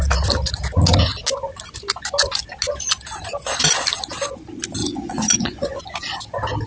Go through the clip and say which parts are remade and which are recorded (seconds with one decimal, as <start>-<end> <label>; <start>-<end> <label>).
0.0-4.8 recorded; 4.8-5.8 remade; 5.8-6.7 recorded